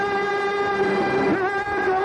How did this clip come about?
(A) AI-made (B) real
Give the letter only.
B